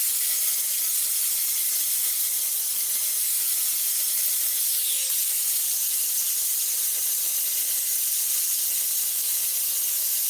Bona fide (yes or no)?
yes